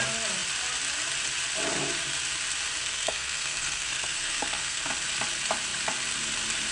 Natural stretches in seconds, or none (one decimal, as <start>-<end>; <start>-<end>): 0.0-2.8; 4.8-6.7